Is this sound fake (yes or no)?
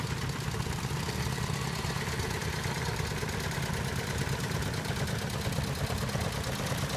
no